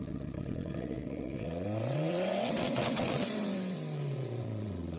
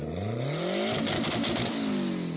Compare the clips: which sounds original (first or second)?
second